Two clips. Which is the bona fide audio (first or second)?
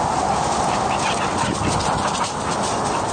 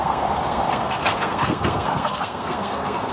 first